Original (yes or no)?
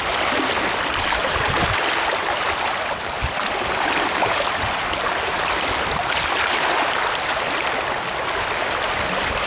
yes